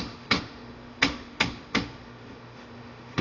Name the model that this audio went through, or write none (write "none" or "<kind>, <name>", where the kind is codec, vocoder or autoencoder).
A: autoencoder, DAC-VAE